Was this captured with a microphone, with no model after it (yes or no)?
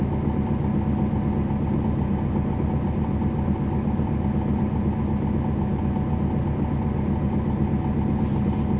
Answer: yes